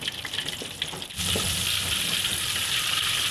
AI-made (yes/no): no